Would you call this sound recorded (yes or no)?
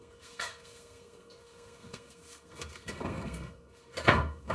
no